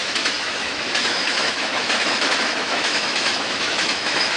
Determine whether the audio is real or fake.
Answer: fake